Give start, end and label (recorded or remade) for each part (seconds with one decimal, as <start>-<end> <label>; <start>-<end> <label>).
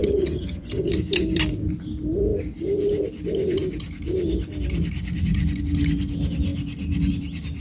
0.0-0.9 remade; 0.9-7.6 recorded